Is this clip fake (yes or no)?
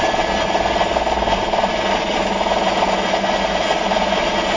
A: no